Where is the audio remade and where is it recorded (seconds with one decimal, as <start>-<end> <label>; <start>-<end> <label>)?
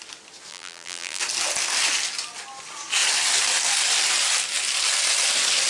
0.0-0.5 recorded; 0.5-1.2 remade; 1.2-5.7 recorded